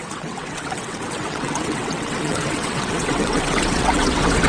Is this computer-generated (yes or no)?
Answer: yes